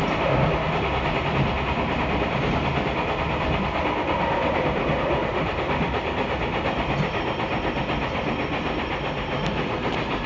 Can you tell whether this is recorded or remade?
recorded